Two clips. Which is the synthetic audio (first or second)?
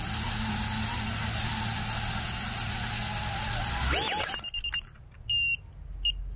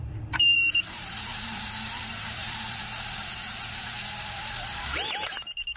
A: second